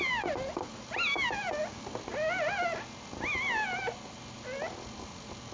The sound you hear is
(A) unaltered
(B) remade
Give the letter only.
A